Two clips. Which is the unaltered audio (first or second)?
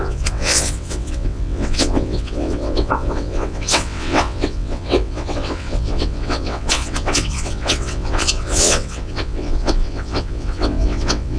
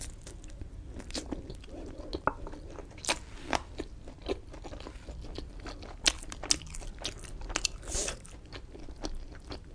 second